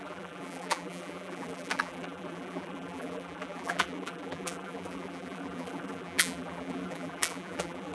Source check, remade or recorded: remade